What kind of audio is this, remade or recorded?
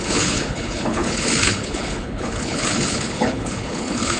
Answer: remade